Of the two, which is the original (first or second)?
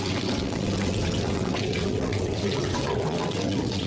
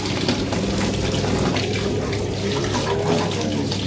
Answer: second